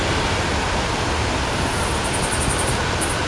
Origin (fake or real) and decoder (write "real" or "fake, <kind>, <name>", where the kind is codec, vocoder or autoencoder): real